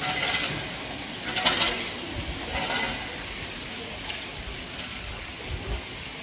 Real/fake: real